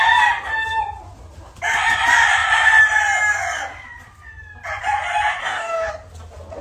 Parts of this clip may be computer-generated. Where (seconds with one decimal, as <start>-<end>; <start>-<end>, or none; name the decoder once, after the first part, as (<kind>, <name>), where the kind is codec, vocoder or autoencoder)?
5.4-5.9 (codec, DAC)